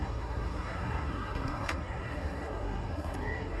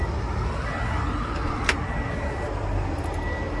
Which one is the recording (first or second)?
second